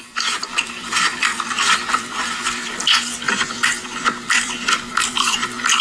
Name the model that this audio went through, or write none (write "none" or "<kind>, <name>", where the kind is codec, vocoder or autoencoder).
vocoder, BigVGAN v2